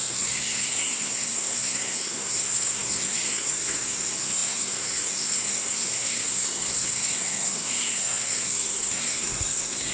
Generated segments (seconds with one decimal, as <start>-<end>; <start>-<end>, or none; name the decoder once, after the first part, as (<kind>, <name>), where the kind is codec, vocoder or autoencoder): 0.0-9.9 (codec, SNAC)